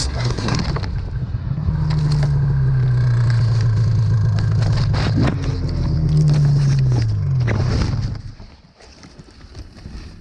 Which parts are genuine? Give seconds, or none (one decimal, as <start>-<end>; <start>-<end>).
0.6-1.2; 1.7-10.2